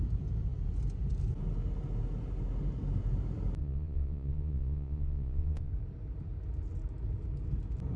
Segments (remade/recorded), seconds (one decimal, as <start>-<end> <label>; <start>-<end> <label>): 0.0-3.6 recorded; 3.6-5.7 remade; 5.7-8.0 recorded